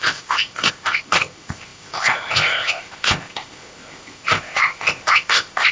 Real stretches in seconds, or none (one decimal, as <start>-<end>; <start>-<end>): none